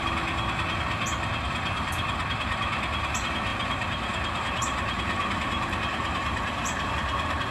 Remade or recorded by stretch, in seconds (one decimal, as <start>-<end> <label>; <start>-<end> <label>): 0.0-3.5 recorded; 3.5-6.9 remade; 6.9-7.5 recorded